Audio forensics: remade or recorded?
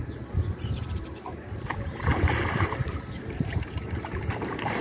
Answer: remade